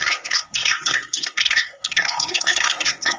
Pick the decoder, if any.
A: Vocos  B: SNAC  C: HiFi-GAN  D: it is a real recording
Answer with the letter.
B